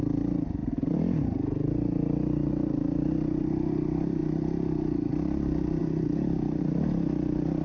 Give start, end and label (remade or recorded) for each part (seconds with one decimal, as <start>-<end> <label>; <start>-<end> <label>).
0.0-7.6 recorded